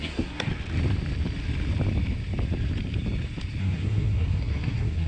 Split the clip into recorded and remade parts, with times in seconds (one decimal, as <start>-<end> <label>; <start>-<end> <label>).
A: 0.0-0.5 remade; 0.5-3.6 recorded; 3.6-5.1 remade